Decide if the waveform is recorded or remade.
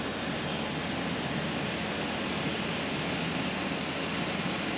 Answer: recorded